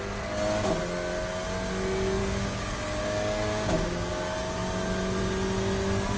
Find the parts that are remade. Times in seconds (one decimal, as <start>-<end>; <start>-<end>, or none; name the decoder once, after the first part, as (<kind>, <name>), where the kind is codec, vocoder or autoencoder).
2.2-4.1 (codec, DAC)